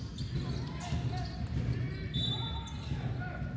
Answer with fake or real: real